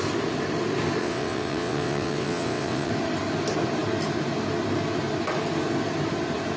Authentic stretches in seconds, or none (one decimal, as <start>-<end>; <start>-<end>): 0.0-1.0; 2.9-6.6